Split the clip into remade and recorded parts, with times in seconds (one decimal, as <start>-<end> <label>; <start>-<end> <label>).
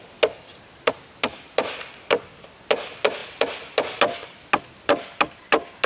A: 0.0-5.9 recorded